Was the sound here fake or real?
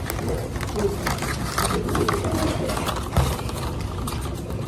real